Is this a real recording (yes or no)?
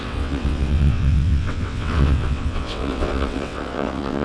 no